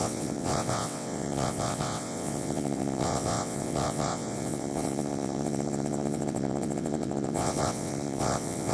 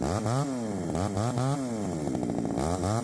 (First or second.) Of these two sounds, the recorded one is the second